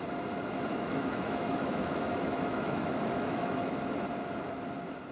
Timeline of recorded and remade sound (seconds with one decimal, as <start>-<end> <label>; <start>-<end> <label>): 0.0-0.7 recorded; 0.7-3.8 remade; 3.8-5.1 recorded